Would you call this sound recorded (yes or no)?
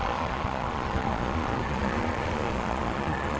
no